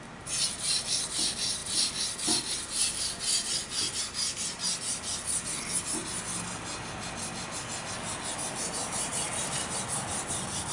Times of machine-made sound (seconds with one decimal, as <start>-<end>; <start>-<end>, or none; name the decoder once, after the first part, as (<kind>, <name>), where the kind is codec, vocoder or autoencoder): 8.8-9.8 (vocoder, BigVGAN v2)